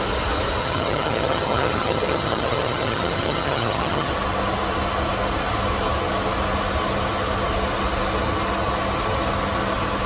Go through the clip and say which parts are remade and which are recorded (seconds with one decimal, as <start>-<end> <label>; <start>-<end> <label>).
0.0-0.6 recorded; 0.6-4.1 remade; 4.1-10.1 recorded